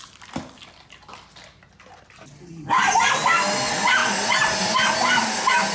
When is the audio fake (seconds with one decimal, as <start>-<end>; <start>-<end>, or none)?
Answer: 4.0-4.6